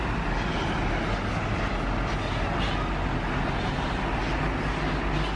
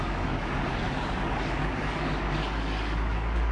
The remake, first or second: second